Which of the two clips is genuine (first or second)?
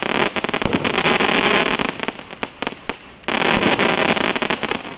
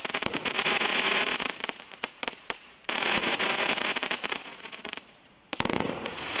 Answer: first